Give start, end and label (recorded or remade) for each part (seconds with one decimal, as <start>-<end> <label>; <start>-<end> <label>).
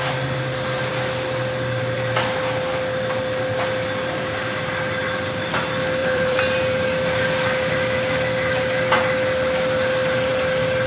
0.0-0.9 recorded; 0.9-5.5 remade; 5.5-6.0 recorded; 6.0-7.7 remade; 7.7-10.9 recorded